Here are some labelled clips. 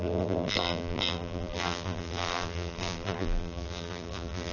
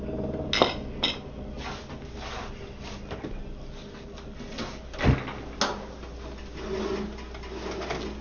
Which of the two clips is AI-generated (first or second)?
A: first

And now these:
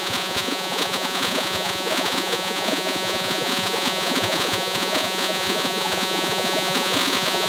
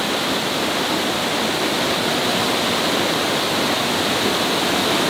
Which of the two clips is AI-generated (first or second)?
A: first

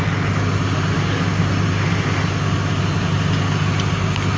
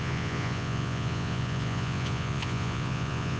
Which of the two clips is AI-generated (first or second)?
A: second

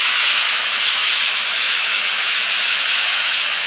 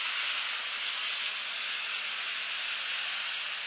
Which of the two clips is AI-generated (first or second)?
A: first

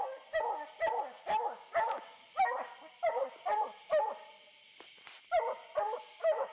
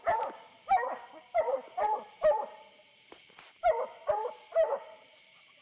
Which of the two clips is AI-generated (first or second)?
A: second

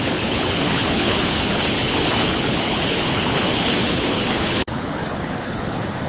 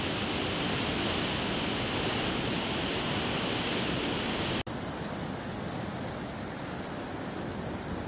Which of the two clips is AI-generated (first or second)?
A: first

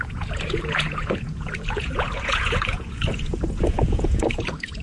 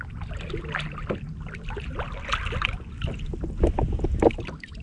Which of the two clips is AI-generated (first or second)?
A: first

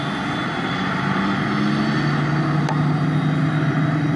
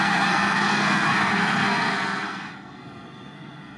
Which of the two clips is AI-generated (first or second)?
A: second